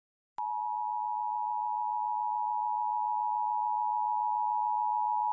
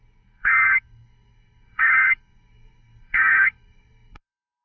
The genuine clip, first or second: first